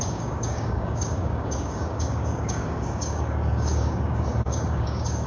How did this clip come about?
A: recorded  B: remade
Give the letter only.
B